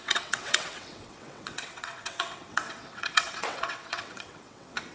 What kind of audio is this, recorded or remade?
remade